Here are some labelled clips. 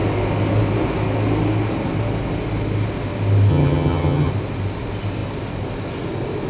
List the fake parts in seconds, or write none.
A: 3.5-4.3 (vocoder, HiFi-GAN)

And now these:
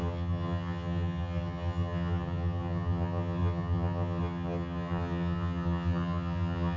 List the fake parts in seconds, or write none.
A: 0.0-6.8 (vocoder, HiFi-GAN)

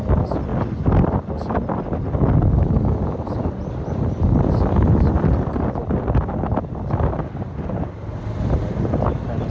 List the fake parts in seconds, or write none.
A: none

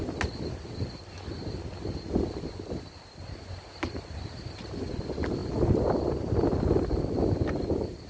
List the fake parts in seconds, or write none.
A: none

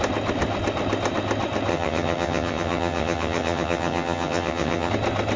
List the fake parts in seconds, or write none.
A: 1.7-4.9 (vocoder, HiFi-GAN)